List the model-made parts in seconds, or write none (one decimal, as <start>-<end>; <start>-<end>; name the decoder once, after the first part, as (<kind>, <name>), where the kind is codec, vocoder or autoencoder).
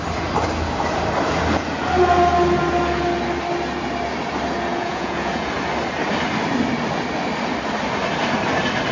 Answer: 4.7-5.5 (vocoder, Vocos)